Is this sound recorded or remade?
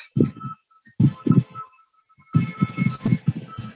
recorded